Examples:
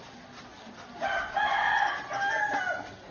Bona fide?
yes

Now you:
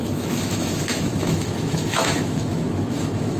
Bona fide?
no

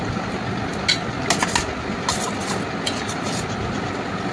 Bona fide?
yes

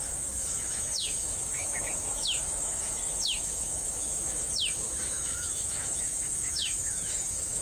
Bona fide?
no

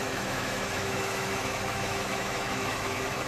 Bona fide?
no